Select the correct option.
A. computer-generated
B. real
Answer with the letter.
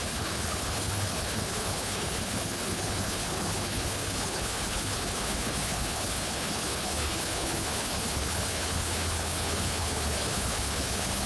A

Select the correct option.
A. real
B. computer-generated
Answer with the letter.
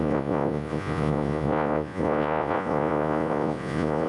B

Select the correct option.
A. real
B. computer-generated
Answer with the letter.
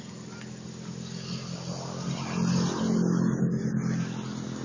A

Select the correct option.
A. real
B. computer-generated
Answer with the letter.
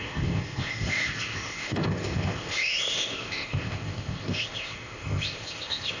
B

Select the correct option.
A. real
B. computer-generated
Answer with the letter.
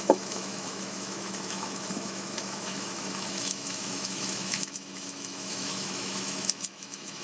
B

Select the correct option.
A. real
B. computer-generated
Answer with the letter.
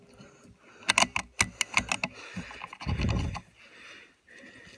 A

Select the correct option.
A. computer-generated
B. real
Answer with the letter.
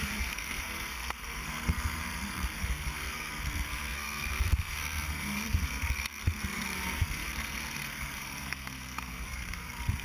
A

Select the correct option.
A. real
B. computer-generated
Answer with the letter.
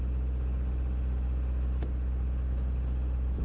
A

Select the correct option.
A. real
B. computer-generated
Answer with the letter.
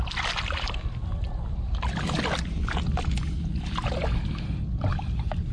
A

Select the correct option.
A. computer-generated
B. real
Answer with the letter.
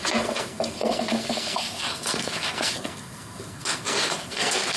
A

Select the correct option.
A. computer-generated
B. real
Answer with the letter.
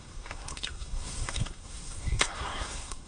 A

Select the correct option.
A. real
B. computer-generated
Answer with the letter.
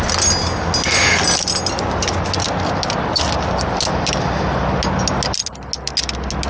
A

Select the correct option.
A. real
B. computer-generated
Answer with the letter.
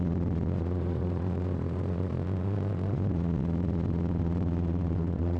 B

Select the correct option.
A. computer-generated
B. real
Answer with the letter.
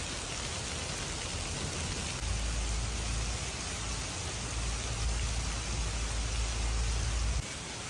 B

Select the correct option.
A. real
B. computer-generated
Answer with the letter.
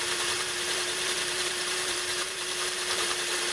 B